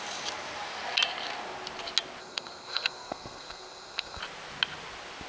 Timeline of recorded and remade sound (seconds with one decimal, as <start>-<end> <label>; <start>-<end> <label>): 0.0-2.2 recorded; 2.2-4.2 remade; 4.2-5.3 recorded